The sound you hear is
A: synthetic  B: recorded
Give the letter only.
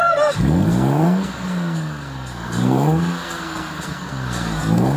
A